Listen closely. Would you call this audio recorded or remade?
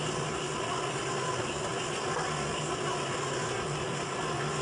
recorded